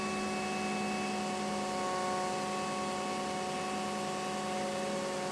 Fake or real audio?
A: real